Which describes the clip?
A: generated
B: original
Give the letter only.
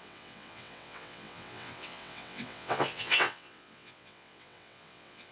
A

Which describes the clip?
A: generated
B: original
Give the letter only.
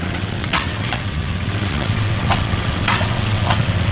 A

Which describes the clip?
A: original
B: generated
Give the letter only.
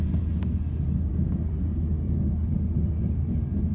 A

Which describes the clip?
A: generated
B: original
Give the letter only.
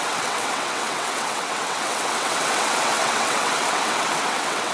A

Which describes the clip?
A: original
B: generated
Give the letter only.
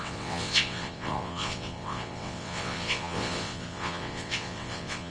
B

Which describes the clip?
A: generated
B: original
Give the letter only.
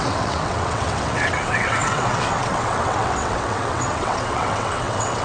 A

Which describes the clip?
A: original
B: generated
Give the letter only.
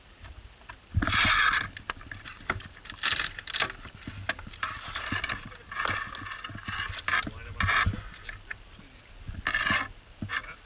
A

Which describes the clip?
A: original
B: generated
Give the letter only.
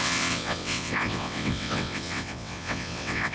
B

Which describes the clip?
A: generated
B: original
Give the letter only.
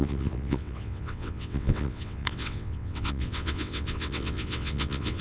A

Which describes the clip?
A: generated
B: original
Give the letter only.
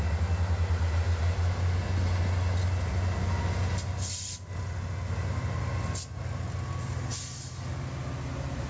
B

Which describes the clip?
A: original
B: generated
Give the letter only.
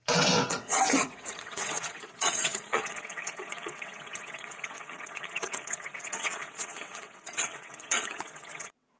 B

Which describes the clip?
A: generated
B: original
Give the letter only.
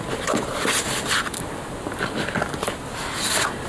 B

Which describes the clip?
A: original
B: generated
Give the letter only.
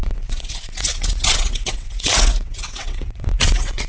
B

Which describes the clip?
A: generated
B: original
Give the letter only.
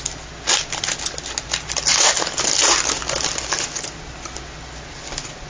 B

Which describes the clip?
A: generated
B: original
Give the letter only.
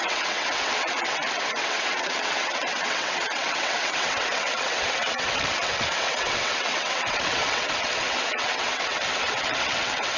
A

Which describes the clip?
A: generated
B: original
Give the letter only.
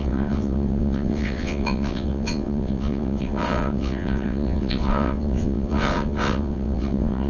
A